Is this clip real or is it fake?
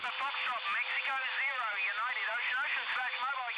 real